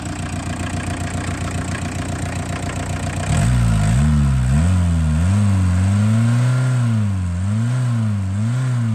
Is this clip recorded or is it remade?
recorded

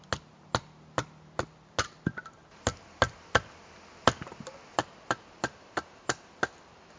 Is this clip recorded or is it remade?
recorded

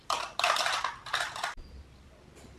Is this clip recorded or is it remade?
recorded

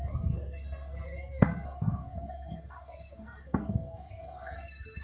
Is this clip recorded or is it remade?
remade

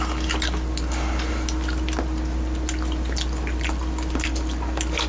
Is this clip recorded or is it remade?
recorded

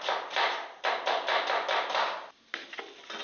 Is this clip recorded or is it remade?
recorded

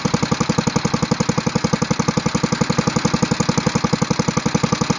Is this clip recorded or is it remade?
recorded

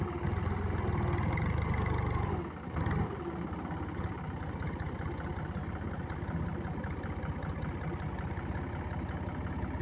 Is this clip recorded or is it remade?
recorded